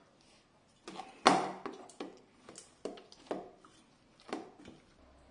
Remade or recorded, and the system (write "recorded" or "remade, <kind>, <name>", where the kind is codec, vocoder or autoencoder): recorded